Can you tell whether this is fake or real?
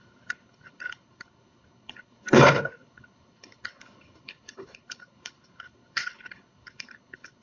fake